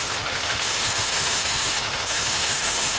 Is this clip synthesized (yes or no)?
yes